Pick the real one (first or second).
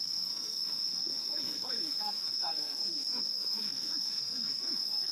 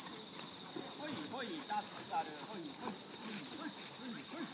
second